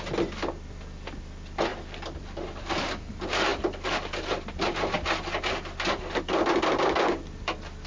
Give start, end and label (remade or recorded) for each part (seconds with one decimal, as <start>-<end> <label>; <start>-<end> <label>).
0.0-7.9 recorded